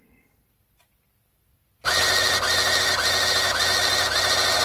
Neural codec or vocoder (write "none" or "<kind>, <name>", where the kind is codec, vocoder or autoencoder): none